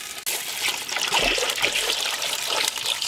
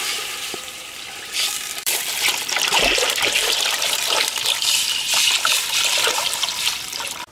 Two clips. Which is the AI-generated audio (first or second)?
second